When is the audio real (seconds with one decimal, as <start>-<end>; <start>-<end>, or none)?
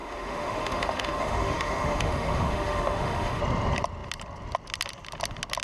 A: 3.4-5.6